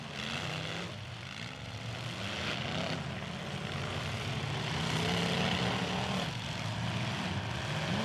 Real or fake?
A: real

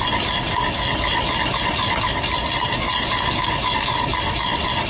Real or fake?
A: real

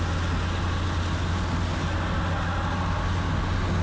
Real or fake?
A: real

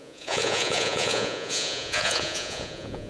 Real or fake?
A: fake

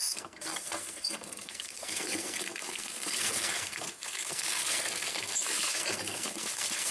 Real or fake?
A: fake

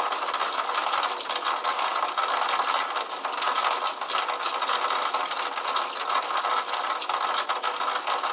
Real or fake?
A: real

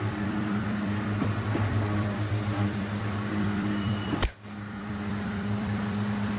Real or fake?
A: fake